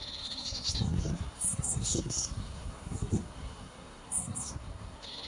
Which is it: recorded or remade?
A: remade